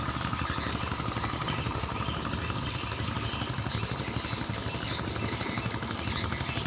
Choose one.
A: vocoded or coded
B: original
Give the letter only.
B